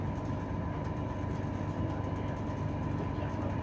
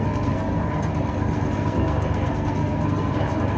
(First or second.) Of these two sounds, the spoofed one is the second